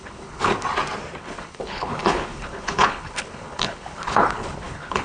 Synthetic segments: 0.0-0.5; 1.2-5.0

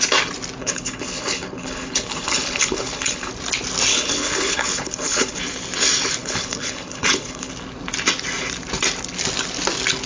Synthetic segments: 0.6-3.3; 3.9-5.4; 6.2-7.5

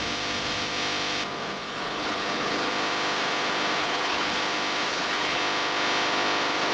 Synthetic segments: 1.6-2.7; 3.8-4.4; 4.9-5.4

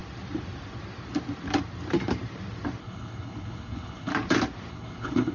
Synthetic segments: 2.8-4.1; 4.7-5.3

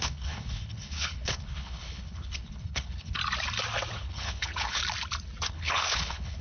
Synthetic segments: 0.0-3.2; 3.9-4.8; 5.5-6.4

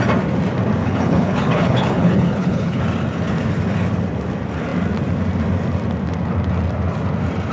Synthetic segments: 0.8-2.8

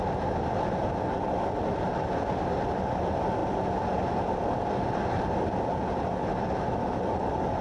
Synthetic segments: none

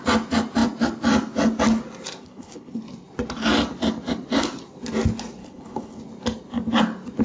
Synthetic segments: 2.2-2.8; 5.4-6.0